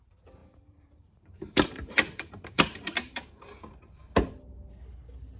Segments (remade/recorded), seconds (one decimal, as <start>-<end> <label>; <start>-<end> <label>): 0.0-0.4 recorded; 0.4-3.6 remade; 3.6-5.4 recorded